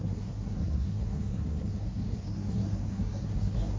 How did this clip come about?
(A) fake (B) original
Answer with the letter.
A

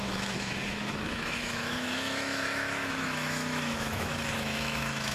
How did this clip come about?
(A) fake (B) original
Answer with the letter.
A